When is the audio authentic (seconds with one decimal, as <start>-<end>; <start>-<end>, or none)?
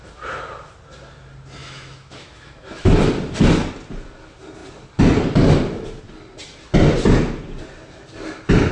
0.0-1.6; 2.9-8.7